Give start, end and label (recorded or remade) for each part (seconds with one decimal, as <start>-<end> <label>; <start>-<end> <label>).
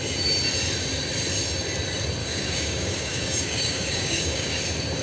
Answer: 0.0-2.2 recorded; 2.2-4.6 remade; 4.6-5.0 recorded